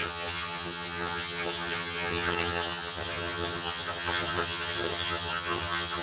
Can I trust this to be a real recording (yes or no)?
no